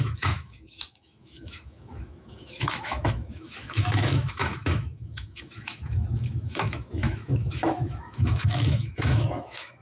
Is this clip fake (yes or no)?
yes